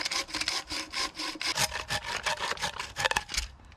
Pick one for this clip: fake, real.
real